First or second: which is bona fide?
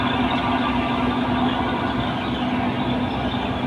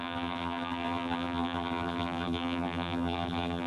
first